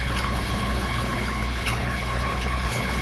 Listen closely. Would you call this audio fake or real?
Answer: fake